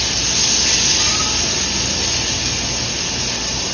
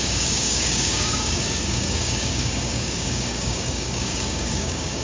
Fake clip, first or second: second